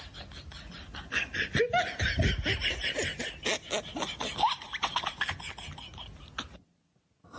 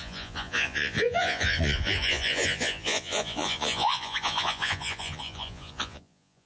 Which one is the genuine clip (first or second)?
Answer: first